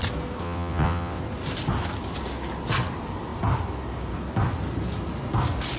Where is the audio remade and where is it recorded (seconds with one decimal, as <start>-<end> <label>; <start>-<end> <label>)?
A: 0.0-0.4 recorded; 0.4-1.2 remade; 1.2-5.8 recorded

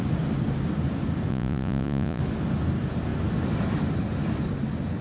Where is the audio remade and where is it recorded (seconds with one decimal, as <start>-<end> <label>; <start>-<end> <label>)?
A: 0.0-1.3 recorded; 1.3-2.2 remade; 2.2-5.0 recorded

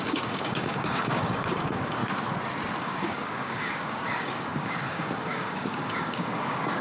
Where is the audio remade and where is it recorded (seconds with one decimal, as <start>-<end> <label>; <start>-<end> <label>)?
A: 0.0-2.0 remade; 2.0-2.8 recorded; 2.8-6.8 remade

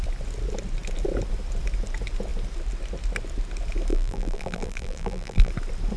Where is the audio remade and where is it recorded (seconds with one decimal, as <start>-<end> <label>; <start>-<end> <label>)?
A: 0.0-3.9 recorded; 3.9-5.5 remade; 5.5-6.0 recorded

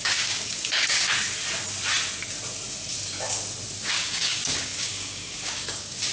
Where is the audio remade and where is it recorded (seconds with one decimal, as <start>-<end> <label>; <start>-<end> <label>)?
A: 0.0-1.1 remade; 1.1-3.8 recorded; 3.8-6.1 remade